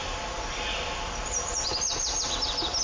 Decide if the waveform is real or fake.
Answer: real